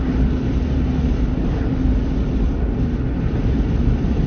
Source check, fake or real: real